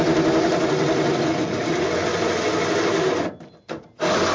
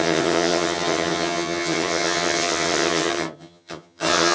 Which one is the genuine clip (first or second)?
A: first